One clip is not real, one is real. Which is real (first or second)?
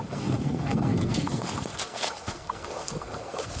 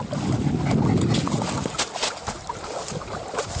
second